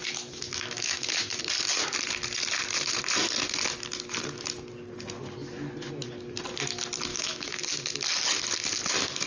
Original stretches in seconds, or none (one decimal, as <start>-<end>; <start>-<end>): 1.4-7.1; 7.6-9.3